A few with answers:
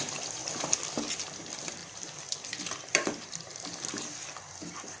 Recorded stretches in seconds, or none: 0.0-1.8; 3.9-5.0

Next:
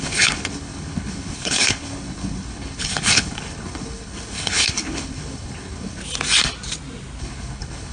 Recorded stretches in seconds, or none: 6.0-7.2

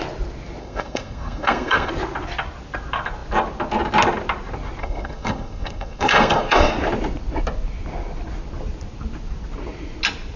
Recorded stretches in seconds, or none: 0.0-0.6; 1.9-4.8; 6.7-10.4